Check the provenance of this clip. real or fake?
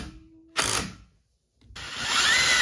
real